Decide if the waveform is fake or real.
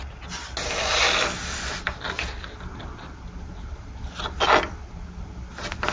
real